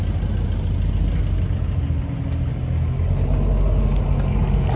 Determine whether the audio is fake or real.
real